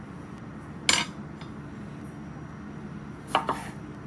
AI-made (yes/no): no